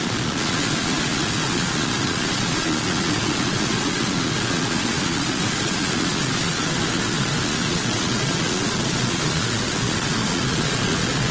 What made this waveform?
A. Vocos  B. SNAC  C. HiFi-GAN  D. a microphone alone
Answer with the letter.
A